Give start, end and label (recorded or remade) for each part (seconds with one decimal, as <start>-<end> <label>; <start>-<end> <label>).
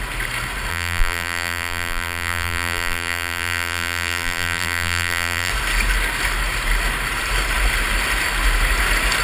0.0-0.7 recorded; 0.7-5.5 remade; 5.5-9.2 recorded